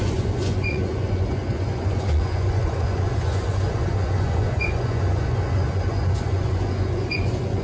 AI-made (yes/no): yes